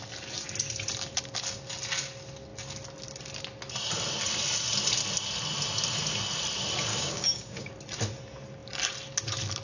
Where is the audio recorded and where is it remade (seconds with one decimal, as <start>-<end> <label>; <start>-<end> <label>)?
0.0-6.9 recorded; 6.9-7.7 remade; 7.7-9.6 recorded